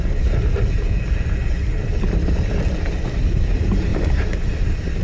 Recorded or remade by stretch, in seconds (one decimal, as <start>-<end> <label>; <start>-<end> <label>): 0.0-1.4 recorded; 1.4-2.2 remade; 2.2-3.9 recorded; 3.9-5.0 remade